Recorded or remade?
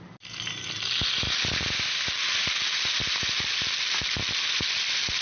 recorded